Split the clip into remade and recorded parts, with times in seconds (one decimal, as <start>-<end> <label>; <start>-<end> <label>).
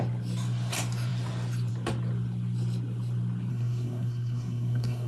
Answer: 0.0-3.5 recorded; 3.5-5.1 remade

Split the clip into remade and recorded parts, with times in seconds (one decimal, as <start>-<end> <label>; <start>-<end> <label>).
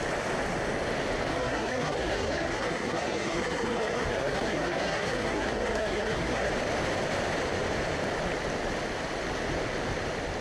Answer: 0.0-1.3 recorded; 1.3-6.5 remade; 6.5-10.4 recorded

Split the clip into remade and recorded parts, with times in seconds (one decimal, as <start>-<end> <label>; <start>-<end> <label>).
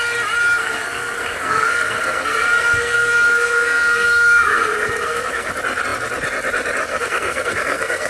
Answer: 0.0-0.6 recorded; 0.6-5.5 remade; 5.5-6.9 recorded; 6.9-8.1 remade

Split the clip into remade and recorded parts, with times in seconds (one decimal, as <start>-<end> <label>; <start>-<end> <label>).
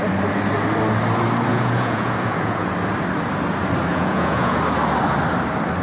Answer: 0.0-1.5 recorded; 1.5-2.7 remade; 2.7-3.9 recorded; 3.9-4.6 remade; 4.6-5.8 recorded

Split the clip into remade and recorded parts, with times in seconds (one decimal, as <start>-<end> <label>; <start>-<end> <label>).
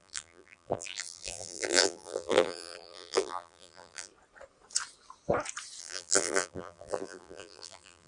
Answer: 0.0-4.1 remade; 4.1-5.8 recorded; 5.8-8.1 remade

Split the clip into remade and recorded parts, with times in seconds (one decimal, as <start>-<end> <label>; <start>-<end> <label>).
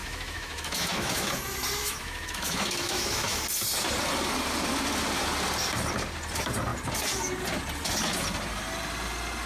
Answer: 0.0-1.3 remade; 1.3-1.8 recorded; 1.8-3.4 remade; 3.4-9.5 recorded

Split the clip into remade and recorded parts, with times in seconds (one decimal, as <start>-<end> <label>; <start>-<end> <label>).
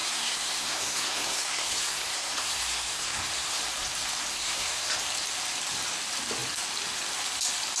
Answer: 0.0-3.6 remade; 3.6-4.3 recorded; 4.3-4.9 remade; 4.9-7.8 recorded